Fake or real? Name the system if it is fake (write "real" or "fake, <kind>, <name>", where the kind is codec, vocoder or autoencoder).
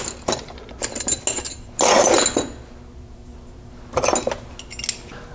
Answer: real